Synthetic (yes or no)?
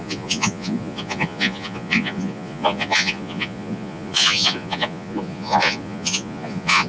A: yes